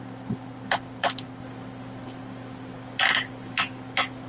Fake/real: real